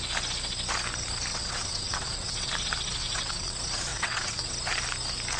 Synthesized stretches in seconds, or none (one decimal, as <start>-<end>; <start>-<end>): 1.3-2.5; 3.0-3.5; 3.9-4.5